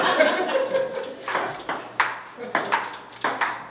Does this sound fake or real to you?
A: real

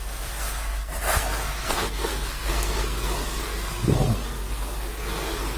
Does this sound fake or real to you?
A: fake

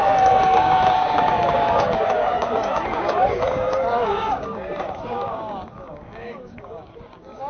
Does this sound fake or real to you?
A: fake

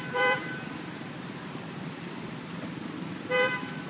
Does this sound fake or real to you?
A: fake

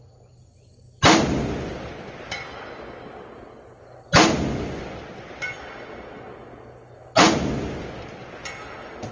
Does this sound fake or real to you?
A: real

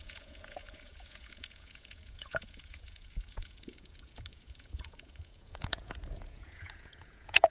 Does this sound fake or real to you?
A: fake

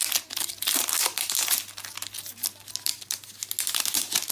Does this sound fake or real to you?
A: real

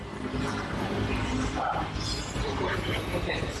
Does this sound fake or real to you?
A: real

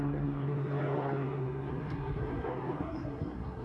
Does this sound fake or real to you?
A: fake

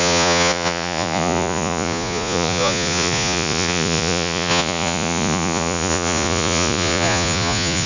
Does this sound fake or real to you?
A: fake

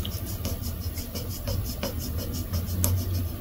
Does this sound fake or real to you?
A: real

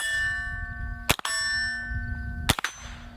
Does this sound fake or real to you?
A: real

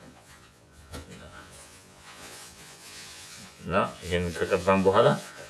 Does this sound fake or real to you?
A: fake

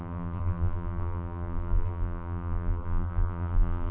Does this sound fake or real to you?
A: fake